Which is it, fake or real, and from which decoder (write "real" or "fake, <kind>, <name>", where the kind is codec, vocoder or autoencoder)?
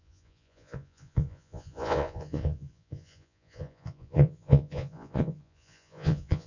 fake, vocoder, Vocos